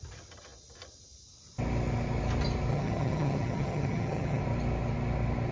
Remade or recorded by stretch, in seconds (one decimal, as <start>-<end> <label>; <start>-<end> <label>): 0.0-2.7 recorded; 2.7-4.4 remade; 4.4-5.5 recorded